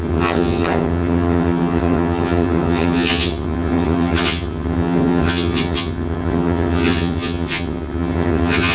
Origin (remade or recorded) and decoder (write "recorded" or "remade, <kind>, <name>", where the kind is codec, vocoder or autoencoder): remade, vocoder, HiFi-GAN